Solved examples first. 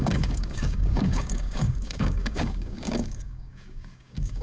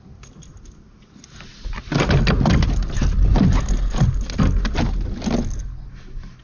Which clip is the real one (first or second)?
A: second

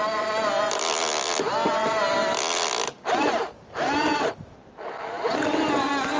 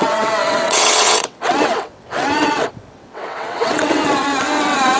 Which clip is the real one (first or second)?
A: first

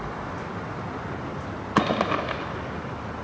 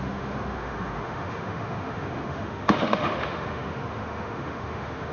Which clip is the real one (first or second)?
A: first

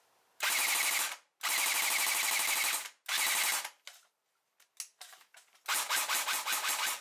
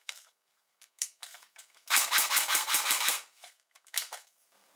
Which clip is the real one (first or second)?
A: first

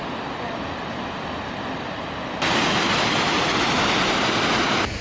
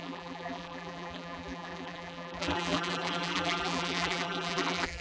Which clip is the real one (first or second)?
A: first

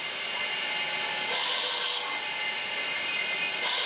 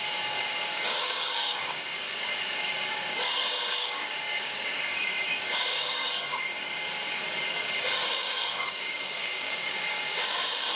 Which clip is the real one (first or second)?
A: first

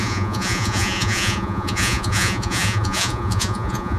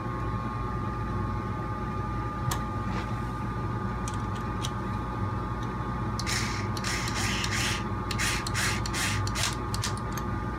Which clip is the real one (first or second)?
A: second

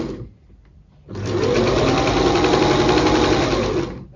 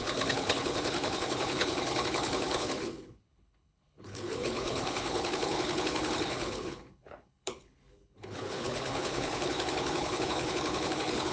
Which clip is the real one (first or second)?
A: first